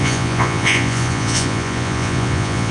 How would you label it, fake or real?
fake